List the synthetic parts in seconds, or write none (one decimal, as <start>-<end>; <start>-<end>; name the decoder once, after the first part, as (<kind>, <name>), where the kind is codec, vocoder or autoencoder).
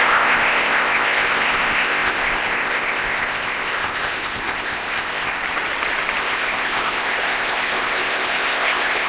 0.0-5.4 (codec, ZipCodec); 6.2-9.1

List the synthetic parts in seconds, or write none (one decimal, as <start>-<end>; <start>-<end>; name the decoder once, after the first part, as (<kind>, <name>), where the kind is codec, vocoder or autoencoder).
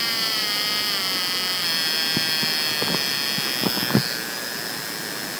none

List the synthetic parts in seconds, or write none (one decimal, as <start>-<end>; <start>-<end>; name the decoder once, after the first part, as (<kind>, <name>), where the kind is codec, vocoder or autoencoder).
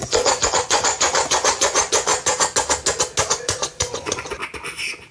0.0-2.1 (vocoder, Vocos); 3.3-4.4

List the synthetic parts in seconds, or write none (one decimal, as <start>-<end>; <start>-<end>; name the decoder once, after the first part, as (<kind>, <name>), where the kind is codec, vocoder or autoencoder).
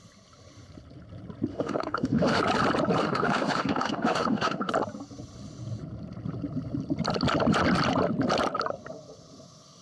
1.5-2.4 (autoencoder, DAC-VAE); 3.0-4.7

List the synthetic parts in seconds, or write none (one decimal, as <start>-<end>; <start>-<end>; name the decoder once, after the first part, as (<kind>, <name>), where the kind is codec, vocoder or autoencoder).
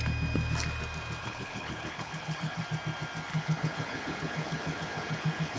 1.2-2.6 (codec, HILCodec); 3.3-5.6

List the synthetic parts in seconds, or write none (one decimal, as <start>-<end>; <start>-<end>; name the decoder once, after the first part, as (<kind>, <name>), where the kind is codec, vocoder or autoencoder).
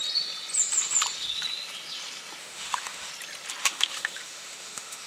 2.4-3.1 (autoencoder, DAC-VAE); 3.6-5.1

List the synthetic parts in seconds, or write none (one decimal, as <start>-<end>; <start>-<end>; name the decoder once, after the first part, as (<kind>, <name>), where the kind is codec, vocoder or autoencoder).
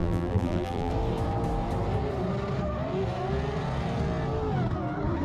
0.0-0.9 (vocoder, BigVGAN v2)